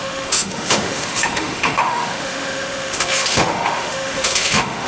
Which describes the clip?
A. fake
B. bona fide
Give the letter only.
A